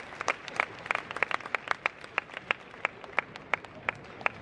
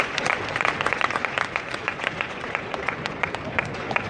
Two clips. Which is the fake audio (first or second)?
second